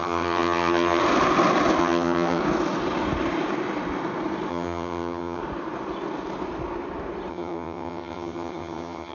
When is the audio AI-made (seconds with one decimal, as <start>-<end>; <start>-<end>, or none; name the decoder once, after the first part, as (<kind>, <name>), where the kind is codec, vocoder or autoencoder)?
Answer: 0.0-1.0 (vocoder, HiFi-GAN); 1.8-2.4; 4.5-5.4; 7.3-9.1